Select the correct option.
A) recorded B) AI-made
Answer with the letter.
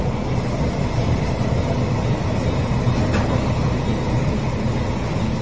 A